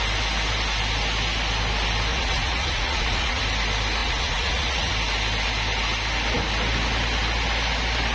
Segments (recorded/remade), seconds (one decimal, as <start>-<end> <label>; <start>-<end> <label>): 0.0-2.1 recorded; 2.1-3.4 remade; 3.4-4.0 recorded; 4.0-4.9 remade; 4.9-8.1 recorded